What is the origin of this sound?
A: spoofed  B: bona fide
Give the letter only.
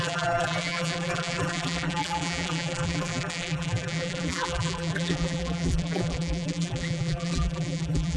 A